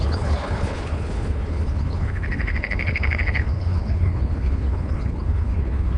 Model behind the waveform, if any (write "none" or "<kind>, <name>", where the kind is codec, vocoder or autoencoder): codec, HILCodec